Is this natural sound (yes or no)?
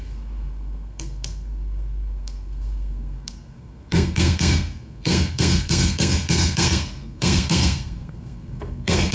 no